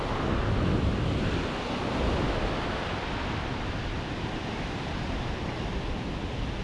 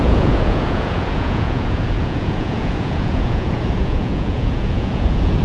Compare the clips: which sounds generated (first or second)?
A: second